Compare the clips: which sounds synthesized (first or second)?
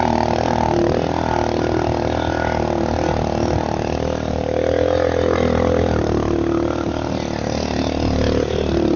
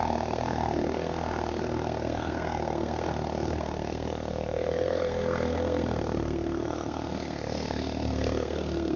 second